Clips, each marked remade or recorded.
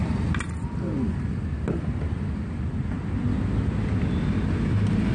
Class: recorded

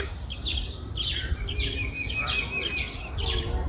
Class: recorded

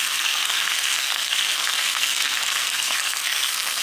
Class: remade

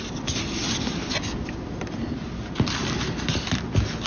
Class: recorded